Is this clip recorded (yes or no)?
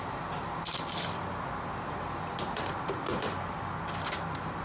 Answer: yes